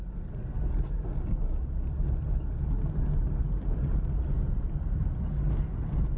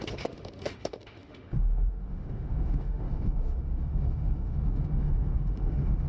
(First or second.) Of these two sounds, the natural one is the first